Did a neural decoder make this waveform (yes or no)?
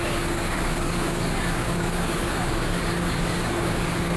yes